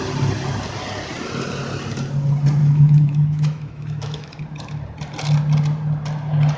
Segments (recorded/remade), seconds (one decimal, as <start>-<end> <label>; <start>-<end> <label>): 0.0-2.6 recorded; 2.6-4.4 remade; 4.4-6.6 recorded